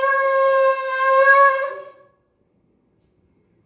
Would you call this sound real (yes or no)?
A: no